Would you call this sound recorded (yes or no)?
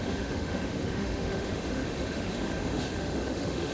no